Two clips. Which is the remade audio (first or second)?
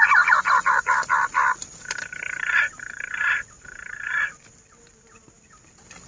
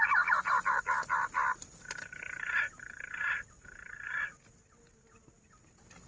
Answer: first